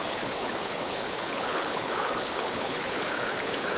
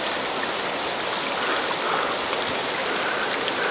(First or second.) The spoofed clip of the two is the first